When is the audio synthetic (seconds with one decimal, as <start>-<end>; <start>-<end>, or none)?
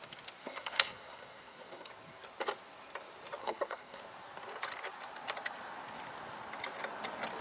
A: 0.4-1.9; 3.4-4.0